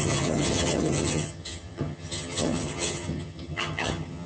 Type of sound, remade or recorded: remade